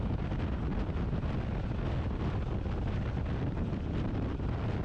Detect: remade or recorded recorded